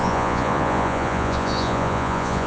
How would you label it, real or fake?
fake